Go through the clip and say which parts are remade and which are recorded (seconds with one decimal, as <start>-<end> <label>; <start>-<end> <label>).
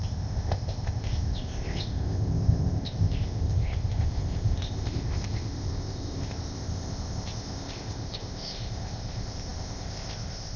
0.0-10.6 remade